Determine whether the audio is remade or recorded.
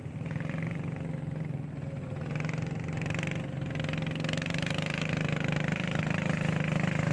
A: recorded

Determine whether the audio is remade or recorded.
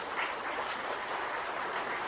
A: recorded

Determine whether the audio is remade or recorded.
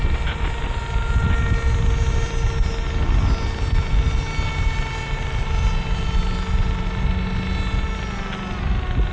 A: recorded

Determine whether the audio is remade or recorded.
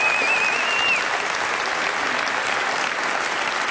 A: recorded